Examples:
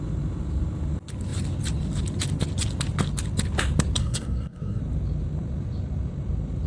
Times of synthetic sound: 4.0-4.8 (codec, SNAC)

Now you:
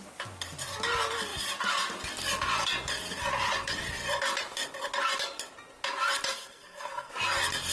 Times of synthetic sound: 6.3-7.1 (codec, SNAC)

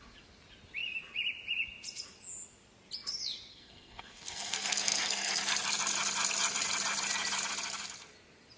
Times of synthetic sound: 3.5-5.3 (codec, SNAC)

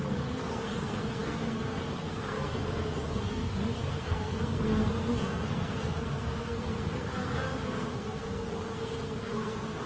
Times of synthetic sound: 0.0-9.9 (codec, SNAC)

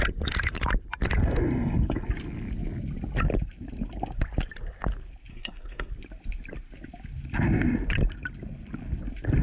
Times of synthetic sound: 5.3-5.9 (codec, SNAC)